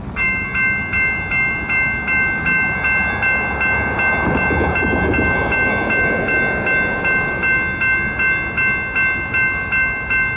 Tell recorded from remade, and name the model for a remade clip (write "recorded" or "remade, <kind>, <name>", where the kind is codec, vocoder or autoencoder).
recorded